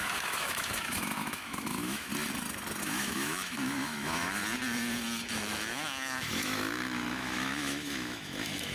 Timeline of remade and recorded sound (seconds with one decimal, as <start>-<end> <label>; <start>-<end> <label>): 0.0-2.1 remade; 2.1-2.8 recorded; 2.8-4.4 remade; 4.4-5.3 recorded; 5.3-8.7 remade